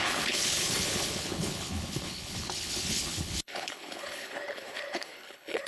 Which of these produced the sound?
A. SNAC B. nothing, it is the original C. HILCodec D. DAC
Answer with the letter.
C